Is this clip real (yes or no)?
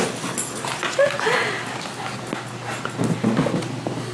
yes